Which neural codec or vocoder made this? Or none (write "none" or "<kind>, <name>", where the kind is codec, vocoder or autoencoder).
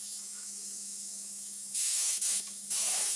autoencoder, DAC-VAE